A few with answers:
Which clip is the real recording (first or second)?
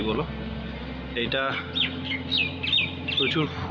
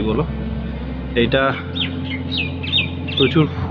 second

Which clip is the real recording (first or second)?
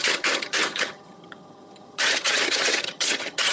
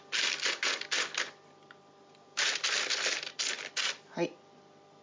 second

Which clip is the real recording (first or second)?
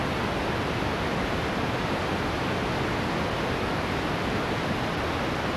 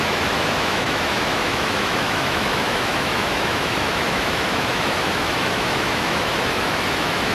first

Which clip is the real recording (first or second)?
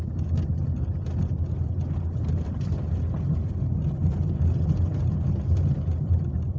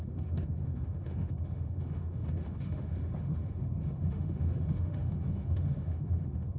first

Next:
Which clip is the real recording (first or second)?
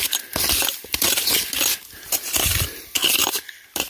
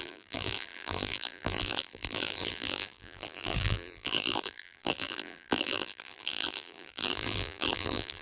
first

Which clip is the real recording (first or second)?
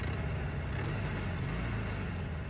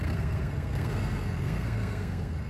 first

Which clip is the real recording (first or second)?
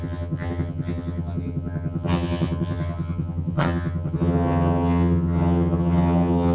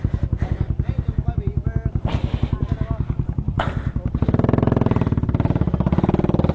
second